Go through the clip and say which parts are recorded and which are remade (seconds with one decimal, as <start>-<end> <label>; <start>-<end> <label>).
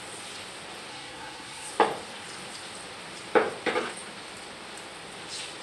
0.0-0.9 recorded; 0.9-1.7 remade; 1.7-5.6 recorded